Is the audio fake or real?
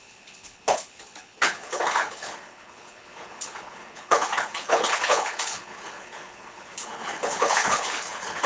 fake